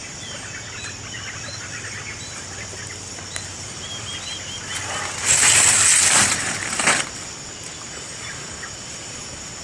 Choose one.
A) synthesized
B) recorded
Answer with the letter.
B